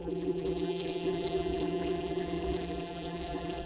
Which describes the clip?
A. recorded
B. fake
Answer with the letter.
B